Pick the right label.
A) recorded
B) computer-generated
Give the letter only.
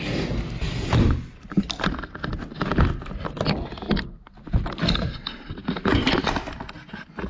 A